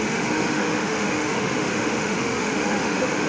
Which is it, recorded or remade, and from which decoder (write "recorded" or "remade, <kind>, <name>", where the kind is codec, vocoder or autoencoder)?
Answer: remade, autoencoder, DAC-VAE